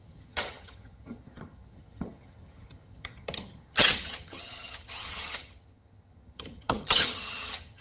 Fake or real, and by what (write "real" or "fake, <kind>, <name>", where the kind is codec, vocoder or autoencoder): fake, vocoder, HiFi-GAN